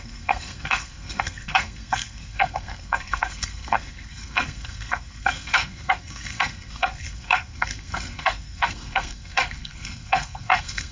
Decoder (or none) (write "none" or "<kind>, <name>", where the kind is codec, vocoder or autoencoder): codec, SNAC